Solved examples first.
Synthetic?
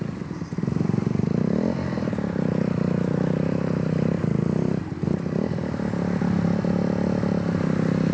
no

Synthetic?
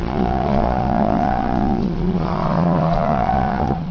yes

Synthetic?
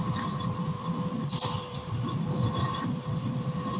yes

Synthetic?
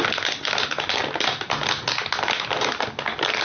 no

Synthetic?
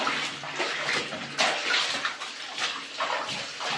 no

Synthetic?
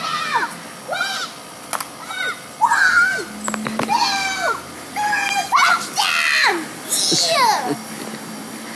no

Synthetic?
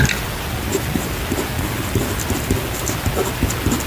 no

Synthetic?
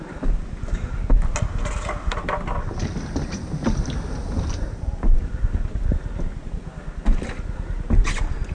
no